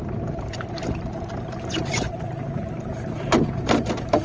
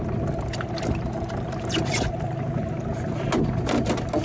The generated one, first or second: first